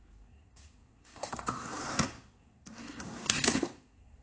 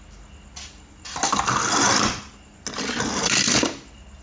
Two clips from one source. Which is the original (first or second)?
second